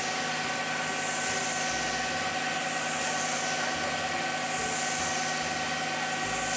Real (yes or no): yes